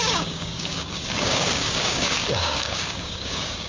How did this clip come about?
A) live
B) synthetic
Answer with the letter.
B